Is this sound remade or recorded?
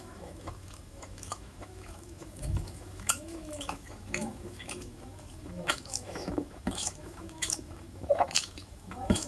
remade